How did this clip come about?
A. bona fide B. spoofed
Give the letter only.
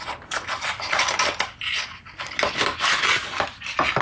A